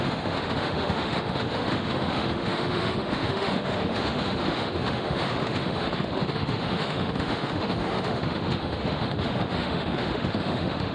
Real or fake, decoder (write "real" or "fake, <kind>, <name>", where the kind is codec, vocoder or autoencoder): fake, autoencoder, DAC-VAE